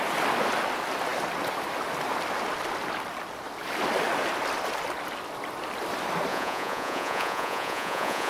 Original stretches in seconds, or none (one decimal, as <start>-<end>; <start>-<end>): 0.0-6.3